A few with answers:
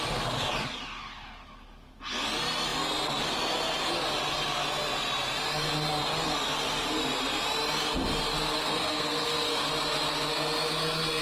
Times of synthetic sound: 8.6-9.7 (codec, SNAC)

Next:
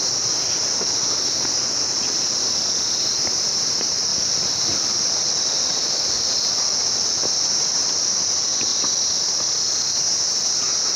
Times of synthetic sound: 4.1-8.2 (vocoder, BigVGAN v2)

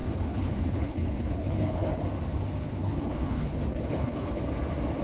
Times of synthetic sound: 0.0-2.0 (codec, HILCodec); 2.8-4.4